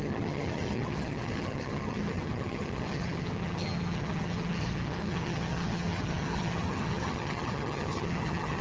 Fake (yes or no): yes